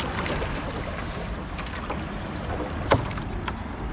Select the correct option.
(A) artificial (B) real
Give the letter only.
B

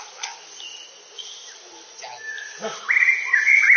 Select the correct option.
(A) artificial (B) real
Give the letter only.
B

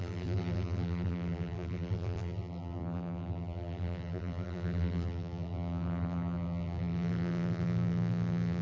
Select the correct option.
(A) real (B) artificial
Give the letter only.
B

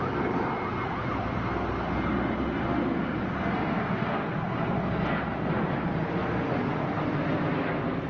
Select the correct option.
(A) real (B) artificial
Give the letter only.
A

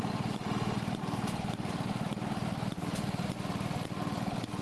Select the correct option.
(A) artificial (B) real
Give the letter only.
B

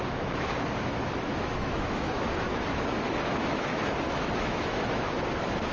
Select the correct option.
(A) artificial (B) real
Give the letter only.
A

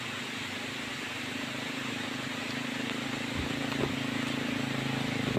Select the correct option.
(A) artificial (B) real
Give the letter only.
B